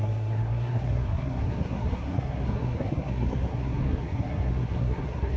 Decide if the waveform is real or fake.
fake